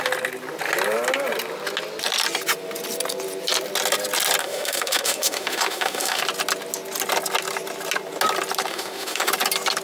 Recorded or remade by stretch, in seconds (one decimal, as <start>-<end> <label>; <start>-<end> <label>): 0.0-4.4 recorded; 4.4-6.2 remade; 6.2-8.7 recorded; 8.7-9.3 remade; 9.3-9.8 recorded